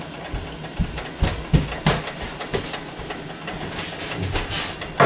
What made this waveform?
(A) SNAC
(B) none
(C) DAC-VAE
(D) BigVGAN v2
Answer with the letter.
B